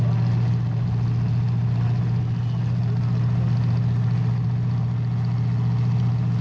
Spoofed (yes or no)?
no